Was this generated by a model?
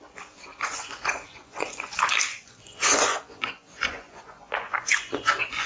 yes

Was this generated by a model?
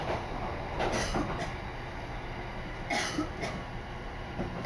no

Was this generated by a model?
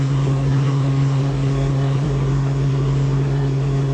yes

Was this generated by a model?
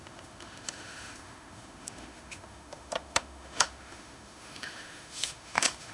yes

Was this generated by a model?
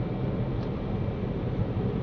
no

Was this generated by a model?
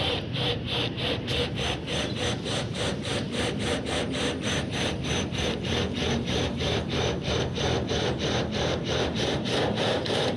yes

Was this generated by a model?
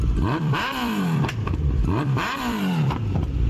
yes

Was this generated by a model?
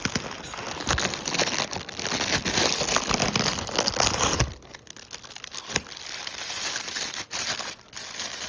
no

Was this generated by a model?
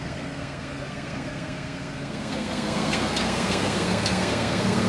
yes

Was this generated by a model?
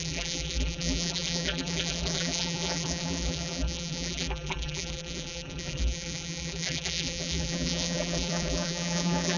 yes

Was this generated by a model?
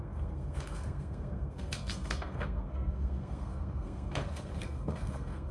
yes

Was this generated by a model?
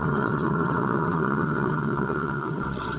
yes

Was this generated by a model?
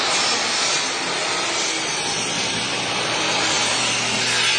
no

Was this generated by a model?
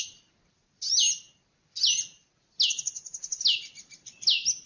no